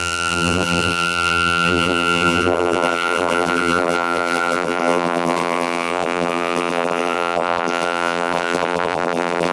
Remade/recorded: remade